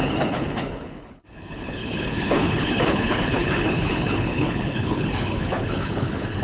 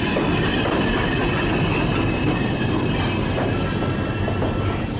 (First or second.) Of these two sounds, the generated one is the first